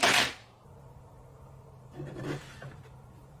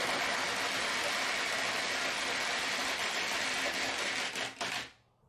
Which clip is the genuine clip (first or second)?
second